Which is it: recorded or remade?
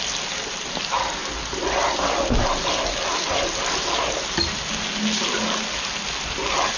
recorded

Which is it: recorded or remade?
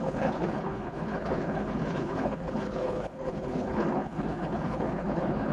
remade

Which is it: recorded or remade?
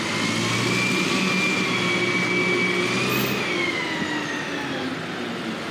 recorded